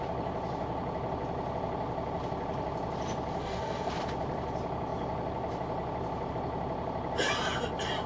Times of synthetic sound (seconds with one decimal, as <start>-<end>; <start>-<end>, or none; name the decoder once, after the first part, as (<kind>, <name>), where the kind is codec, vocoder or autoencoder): 3.4-3.9 (codec, SNAC)